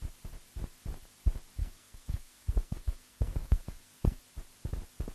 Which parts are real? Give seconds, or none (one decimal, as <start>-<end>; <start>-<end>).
0.0-1.6; 4.2-5.1